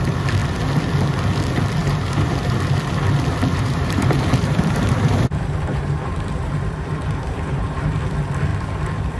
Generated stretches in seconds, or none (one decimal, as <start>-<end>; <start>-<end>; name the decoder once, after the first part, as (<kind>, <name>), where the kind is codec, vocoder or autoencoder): 1.8-2.6 (vocoder, BigVGAN v2); 3.5-8.0